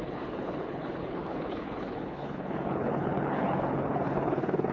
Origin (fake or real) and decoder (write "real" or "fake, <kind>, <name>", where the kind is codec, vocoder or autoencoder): fake, codec, HILCodec